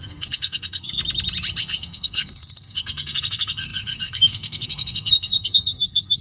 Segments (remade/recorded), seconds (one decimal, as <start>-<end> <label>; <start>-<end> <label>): 0.0-1.0 remade; 1.0-1.6 recorded; 1.6-6.2 remade